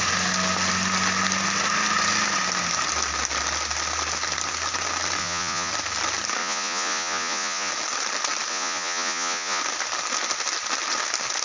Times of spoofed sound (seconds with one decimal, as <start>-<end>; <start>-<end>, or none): 5.2-5.7; 6.4-7.7; 8.5-9.6

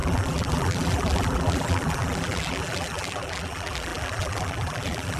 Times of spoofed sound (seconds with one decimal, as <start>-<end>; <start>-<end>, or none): 0.0-5.2